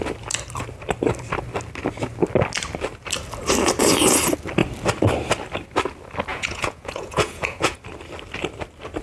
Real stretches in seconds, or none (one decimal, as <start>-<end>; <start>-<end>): 0.0-6.3; 7.8-9.0